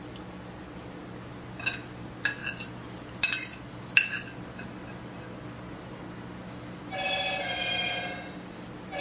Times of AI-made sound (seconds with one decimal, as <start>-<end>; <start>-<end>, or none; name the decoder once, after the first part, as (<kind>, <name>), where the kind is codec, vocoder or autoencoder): none